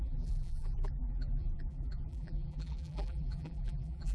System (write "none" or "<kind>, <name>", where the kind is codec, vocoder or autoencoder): vocoder, BigVGAN v2